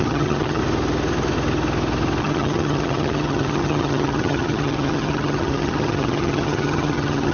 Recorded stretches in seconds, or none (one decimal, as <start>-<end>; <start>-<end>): 0.6-2.2